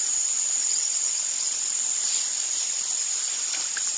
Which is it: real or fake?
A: real